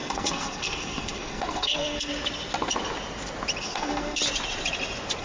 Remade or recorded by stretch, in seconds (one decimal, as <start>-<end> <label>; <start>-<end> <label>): 0.0-2.1 remade; 2.1-3.6 recorded; 3.6-4.2 remade; 4.2-5.2 recorded